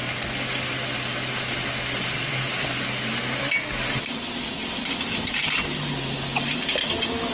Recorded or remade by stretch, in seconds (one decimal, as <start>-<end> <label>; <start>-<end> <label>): 0.0-4.6 recorded; 4.6-5.5 remade; 5.5-7.3 recorded

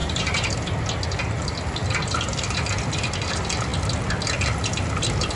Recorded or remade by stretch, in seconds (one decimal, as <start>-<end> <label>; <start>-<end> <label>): 0.0-0.5 remade; 0.5-5.3 recorded

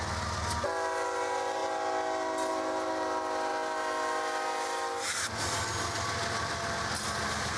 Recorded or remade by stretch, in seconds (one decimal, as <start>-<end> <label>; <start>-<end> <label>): 0.0-7.6 recorded

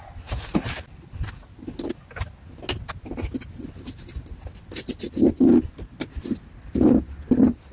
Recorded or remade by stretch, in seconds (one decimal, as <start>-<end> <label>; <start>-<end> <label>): 0.0-7.7 recorded

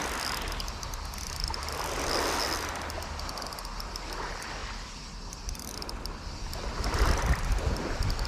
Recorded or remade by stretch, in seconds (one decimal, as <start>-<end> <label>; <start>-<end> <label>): 0.0-8.3 recorded